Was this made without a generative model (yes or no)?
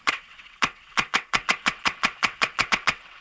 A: no